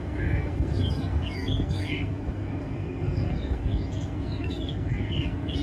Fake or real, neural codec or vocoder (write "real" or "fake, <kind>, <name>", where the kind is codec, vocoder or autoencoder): fake, codec, SNAC